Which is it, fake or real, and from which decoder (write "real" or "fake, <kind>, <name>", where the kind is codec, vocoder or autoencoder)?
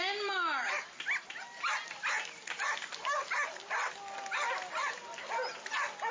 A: real